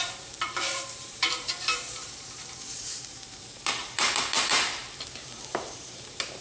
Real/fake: fake